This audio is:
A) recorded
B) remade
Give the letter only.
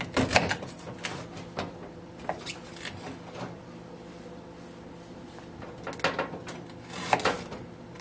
A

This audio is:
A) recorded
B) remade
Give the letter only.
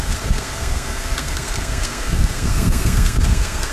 B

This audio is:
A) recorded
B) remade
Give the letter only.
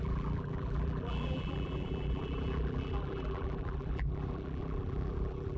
B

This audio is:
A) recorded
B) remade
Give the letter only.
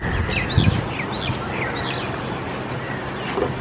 A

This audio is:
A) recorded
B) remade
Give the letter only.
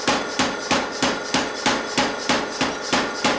A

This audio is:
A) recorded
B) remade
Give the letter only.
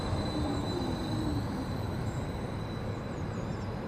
B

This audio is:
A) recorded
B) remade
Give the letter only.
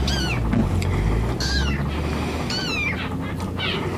A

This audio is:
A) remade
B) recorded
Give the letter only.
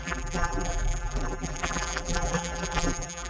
A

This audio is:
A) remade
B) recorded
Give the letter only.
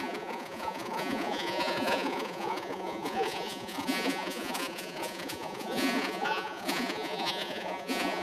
A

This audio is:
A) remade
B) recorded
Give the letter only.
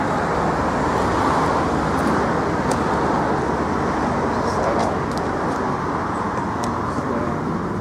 B